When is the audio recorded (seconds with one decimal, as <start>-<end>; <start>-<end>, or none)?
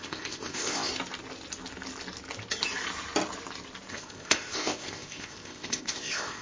0.9-3.9